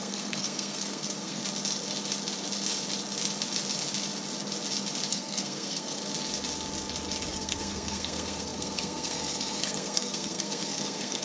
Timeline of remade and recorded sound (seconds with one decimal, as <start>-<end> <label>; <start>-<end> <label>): 0.0-1.4 remade; 1.4-5.1 recorded; 5.1-6.0 remade; 6.0-7.3 recorded; 7.3-11.2 remade